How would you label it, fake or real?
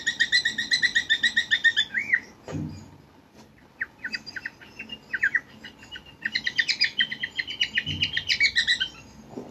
real